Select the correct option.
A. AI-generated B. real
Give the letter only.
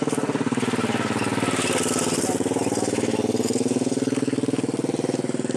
B